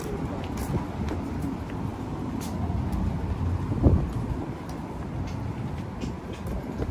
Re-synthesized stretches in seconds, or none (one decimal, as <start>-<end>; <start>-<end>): none